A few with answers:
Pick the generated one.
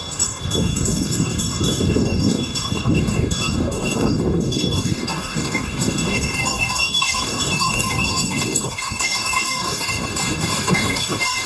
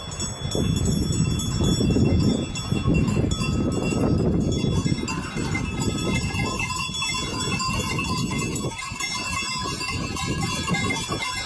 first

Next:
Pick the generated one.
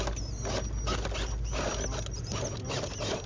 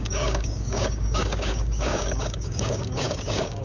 second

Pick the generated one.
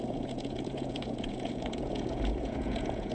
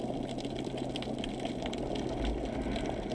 first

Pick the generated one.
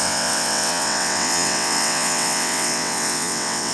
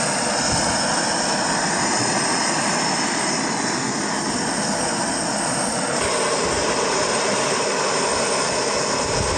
first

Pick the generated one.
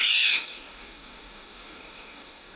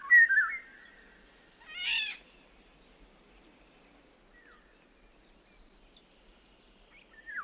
first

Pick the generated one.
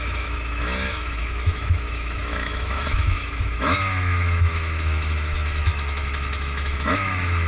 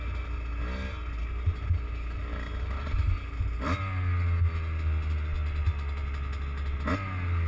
first